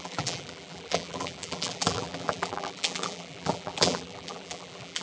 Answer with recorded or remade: remade